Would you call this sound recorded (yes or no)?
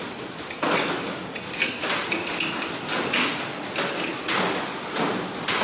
yes